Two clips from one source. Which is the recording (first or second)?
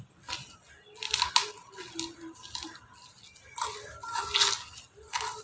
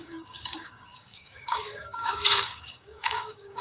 first